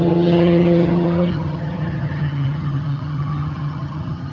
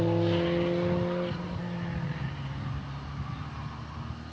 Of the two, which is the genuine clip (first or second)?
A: second